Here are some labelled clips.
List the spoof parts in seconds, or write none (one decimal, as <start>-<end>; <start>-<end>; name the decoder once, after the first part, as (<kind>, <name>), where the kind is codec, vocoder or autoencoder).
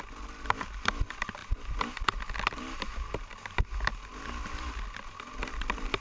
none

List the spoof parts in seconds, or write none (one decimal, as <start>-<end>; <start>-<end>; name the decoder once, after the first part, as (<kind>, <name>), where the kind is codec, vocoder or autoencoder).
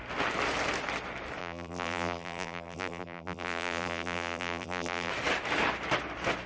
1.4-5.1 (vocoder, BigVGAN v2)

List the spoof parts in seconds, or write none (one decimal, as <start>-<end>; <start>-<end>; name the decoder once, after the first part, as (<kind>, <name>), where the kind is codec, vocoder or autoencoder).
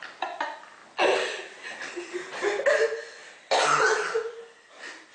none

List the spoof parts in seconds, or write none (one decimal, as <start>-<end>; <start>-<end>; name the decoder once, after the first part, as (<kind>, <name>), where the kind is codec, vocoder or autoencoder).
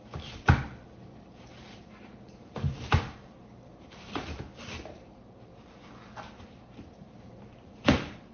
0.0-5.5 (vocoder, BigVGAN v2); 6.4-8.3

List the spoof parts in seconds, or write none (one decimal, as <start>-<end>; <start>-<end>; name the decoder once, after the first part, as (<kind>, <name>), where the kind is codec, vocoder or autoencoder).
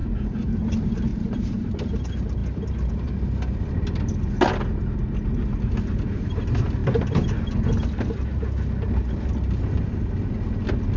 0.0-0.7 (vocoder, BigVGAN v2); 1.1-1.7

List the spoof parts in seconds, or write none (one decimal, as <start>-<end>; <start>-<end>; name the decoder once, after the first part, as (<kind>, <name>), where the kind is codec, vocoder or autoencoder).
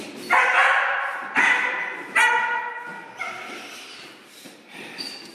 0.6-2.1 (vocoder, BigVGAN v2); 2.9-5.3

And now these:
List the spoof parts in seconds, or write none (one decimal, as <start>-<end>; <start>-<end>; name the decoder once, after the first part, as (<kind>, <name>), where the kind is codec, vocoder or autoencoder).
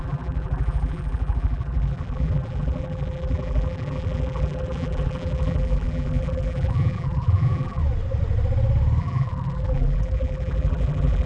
0.0-7.8 (vocoder, BigVGAN v2); 9.0-11.3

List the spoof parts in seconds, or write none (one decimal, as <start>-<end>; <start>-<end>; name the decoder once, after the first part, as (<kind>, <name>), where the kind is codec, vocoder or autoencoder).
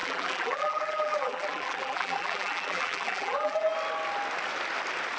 0.0-3.7 (vocoder, BigVGAN v2)